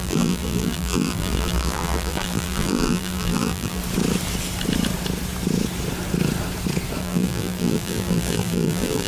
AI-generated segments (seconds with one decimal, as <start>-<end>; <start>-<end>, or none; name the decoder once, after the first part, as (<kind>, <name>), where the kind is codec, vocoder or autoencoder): 0.0-3.8 (vocoder, BigVGAN v2); 7.0-9.1